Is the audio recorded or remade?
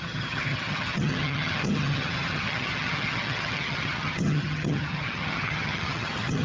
remade